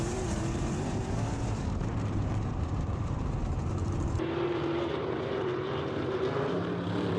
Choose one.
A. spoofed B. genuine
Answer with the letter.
A